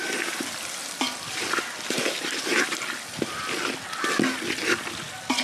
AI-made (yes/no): no